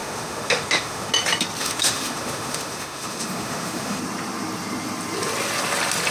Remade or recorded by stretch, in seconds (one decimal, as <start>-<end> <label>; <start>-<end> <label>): 0.0-1.1 remade; 1.1-1.6 recorded; 1.6-4.0 remade; 4.0-6.1 recorded